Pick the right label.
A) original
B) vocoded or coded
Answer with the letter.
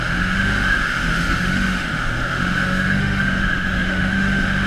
B